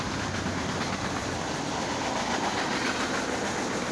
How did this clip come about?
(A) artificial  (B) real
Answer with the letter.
B